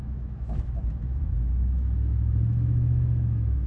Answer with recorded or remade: remade